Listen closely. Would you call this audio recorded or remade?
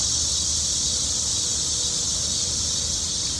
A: recorded